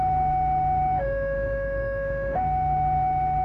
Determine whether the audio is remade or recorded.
remade